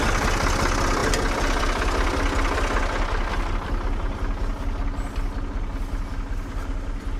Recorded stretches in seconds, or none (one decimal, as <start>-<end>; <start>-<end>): 0.0-7.2